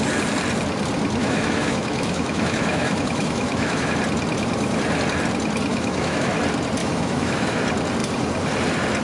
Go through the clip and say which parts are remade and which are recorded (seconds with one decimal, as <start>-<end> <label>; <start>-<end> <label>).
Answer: 0.0-1.2 recorded; 1.2-3.9 remade; 3.9-5.7 recorded; 5.7-6.3 remade; 6.3-6.8 recorded; 6.8-7.6 remade; 7.6-9.0 recorded